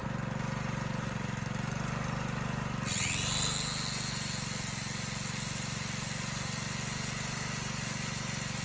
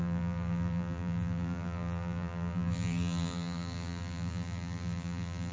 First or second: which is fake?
second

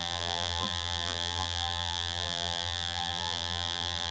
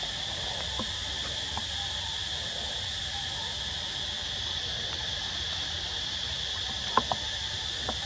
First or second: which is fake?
first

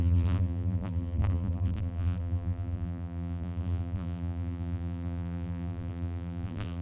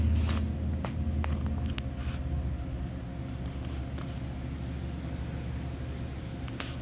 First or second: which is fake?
first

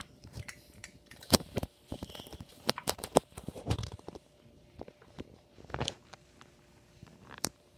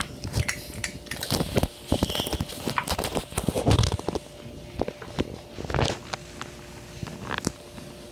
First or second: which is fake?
first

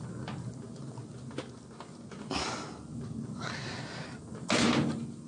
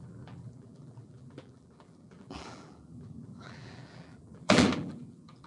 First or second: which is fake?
second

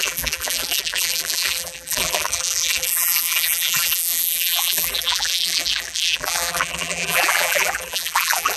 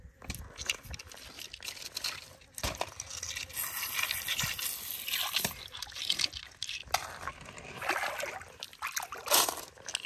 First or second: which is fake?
first